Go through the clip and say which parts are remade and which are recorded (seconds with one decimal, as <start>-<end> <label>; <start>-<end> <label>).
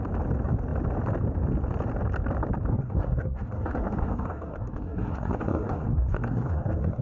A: 0.0-2.7 recorded; 2.7-7.0 remade